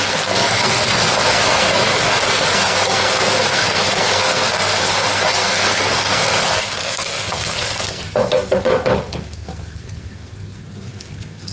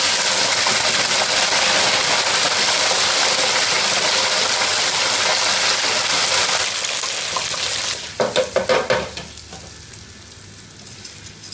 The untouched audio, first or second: second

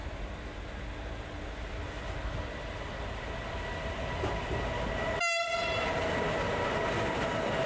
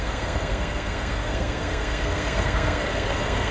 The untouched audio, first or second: first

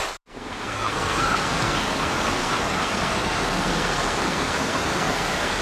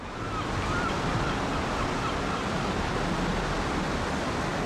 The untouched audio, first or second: second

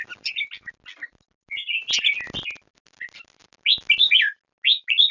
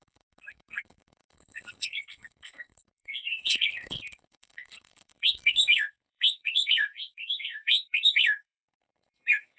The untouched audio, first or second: first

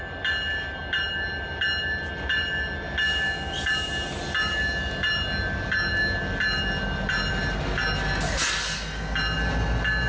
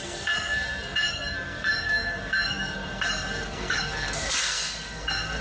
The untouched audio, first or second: first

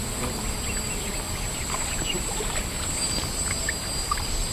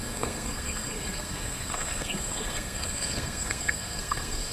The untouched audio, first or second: first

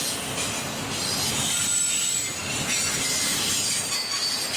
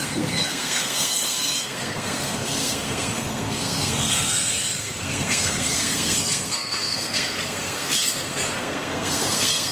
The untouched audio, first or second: first